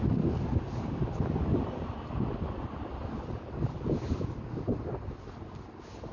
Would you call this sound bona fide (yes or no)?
yes